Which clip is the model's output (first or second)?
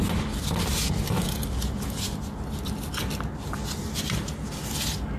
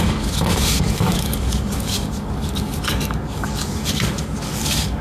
second